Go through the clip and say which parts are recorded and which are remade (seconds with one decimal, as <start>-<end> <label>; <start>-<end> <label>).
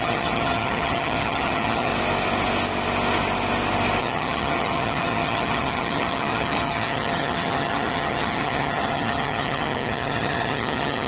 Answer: 0.0-1.9 remade; 1.9-4.0 recorded; 4.0-11.1 remade